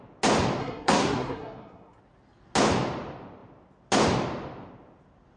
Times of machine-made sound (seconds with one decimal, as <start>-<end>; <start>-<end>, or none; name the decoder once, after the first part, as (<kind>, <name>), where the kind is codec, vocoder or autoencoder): 0.6-2.0 (codec, SNAC)